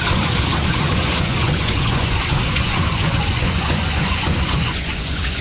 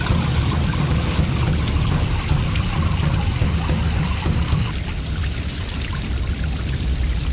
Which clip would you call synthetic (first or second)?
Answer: first